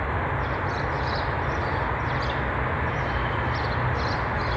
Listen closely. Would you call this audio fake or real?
real